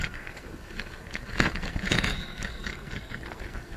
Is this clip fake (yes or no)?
yes